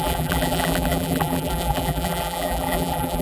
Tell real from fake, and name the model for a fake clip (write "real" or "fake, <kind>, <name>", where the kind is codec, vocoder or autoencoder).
fake, vocoder, BigVGAN v2